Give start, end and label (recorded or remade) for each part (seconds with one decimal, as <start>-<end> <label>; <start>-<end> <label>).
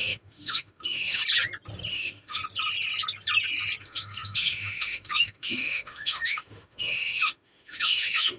0.0-1.2 remade; 1.2-1.9 recorded; 1.9-2.4 remade; 2.4-3.8 recorded; 3.8-8.4 remade